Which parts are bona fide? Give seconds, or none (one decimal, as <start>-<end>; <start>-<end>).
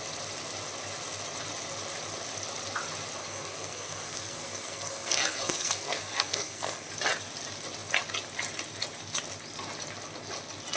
0.0-3.2; 6.9-10.8